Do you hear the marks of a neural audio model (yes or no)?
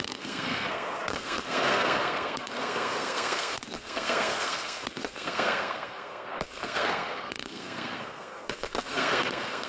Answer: yes